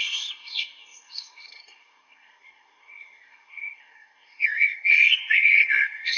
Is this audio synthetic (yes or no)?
yes